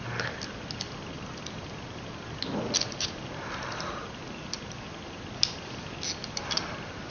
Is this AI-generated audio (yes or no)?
no